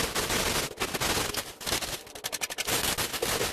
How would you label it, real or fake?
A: real